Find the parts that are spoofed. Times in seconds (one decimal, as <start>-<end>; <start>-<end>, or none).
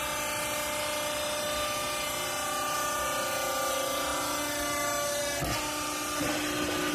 none